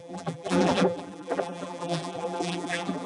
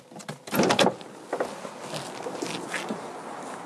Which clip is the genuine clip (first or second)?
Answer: second